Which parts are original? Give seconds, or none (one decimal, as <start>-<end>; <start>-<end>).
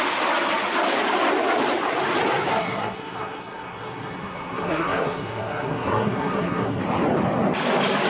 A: 0.0-2.5; 6.8-8.1